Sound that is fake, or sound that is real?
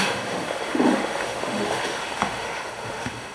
fake